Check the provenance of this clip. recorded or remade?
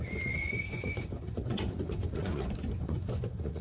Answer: remade